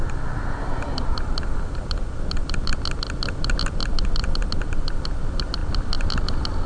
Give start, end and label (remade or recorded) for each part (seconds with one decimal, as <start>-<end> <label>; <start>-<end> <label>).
0.0-6.7 recorded